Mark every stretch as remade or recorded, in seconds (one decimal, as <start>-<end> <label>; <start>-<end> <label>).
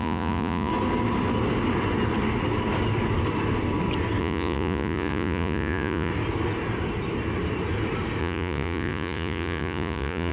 0.0-0.7 remade; 0.7-4.2 recorded; 4.2-6.1 remade; 6.1-8.2 recorded; 8.2-10.3 remade